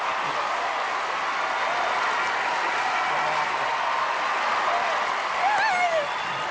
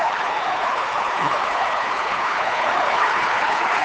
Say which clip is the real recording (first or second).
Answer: first